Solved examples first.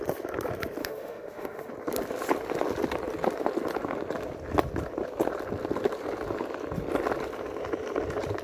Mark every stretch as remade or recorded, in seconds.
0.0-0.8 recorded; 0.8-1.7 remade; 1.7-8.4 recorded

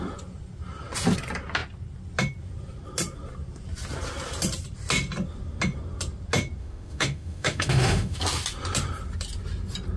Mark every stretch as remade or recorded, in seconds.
0.0-6.6 recorded; 6.6-8.2 remade; 8.2-10.0 recorded